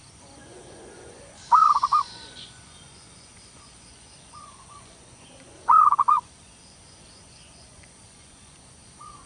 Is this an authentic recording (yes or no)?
no